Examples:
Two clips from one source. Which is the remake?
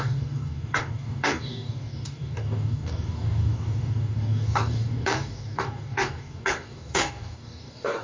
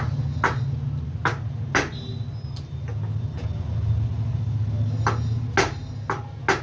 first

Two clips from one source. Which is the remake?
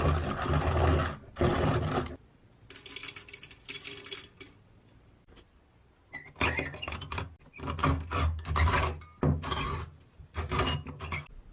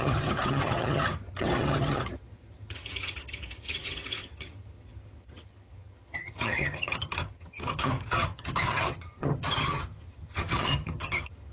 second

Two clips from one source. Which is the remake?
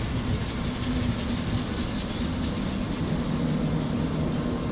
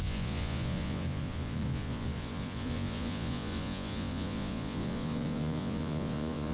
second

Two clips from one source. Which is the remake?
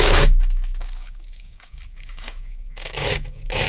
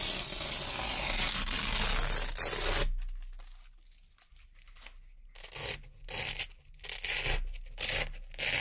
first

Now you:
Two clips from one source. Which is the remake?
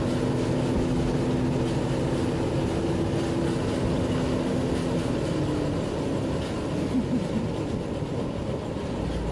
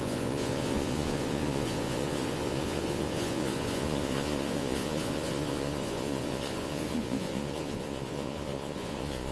second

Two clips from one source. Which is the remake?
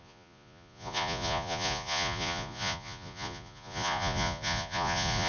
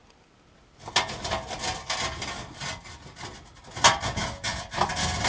first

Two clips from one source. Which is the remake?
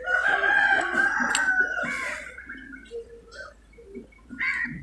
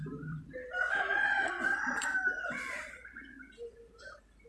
second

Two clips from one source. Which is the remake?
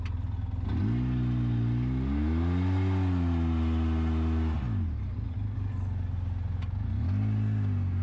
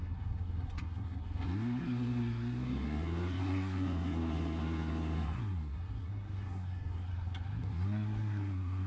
second